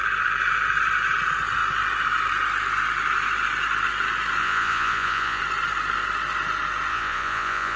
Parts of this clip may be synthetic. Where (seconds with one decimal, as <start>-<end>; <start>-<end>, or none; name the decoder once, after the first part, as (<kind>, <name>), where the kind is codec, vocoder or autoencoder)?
4.4-5.4 (vocoder, Vocos); 6.9-7.8